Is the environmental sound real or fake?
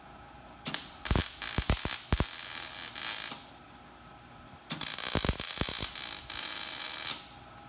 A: real